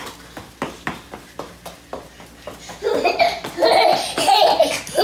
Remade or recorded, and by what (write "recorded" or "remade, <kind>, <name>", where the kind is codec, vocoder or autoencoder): recorded